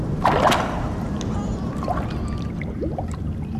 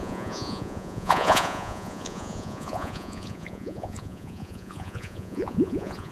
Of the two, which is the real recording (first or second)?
first